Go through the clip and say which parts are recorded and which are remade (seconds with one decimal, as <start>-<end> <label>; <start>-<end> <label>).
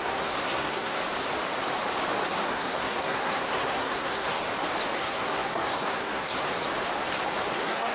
0.0-1.0 remade; 1.0-2.3 recorded; 2.3-4.4 remade; 4.4-5.0 recorded; 5.0-6.4 remade; 6.4-7.5 recorded; 7.5-7.9 remade